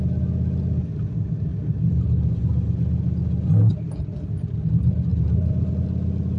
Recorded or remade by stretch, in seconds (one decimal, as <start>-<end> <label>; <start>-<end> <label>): 0.0-1.5 recorded; 1.5-2.7 remade; 2.7-5.1 recorded; 5.1-5.7 remade; 5.7-6.4 recorded